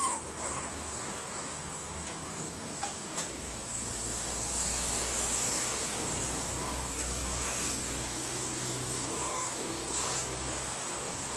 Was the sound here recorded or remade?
remade